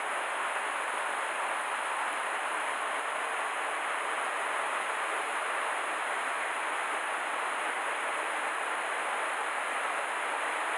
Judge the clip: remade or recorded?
recorded